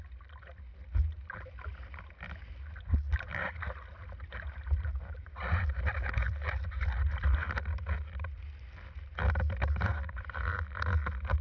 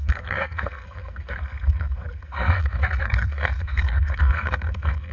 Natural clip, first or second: first